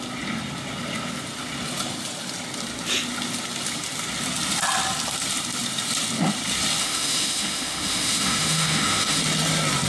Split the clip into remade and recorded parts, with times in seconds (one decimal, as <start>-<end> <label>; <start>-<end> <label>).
0.0-6.8 recorded; 6.8-9.2 remade; 9.2-9.9 recorded